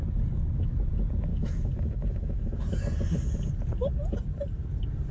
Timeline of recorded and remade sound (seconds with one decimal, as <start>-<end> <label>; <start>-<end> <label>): 0.0-1.3 recorded; 1.3-2.6 remade; 2.6-5.1 recorded